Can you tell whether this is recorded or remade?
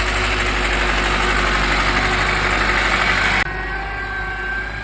recorded